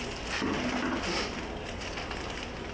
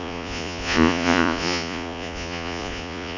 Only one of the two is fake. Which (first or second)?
second